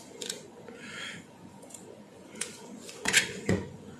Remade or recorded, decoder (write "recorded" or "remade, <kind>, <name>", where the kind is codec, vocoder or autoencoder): remade, vocoder, Vocos